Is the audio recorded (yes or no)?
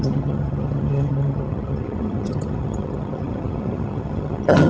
no